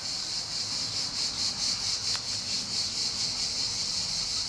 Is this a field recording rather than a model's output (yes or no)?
yes